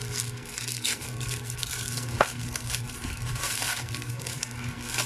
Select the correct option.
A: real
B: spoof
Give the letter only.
B